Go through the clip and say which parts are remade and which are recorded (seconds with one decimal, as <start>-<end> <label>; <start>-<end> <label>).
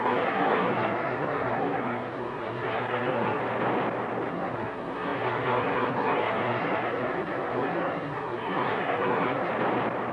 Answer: 0.0-3.4 remade; 3.4-4.3 recorded; 4.3-9.5 remade; 9.5-10.1 recorded